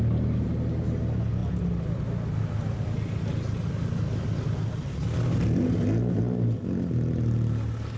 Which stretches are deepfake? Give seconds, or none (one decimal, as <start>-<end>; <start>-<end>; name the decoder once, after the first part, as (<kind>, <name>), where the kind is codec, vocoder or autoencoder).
none